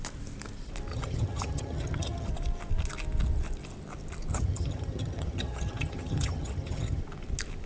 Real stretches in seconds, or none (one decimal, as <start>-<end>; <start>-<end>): 0.0-0.9; 2.3-4.3; 7.0-7.7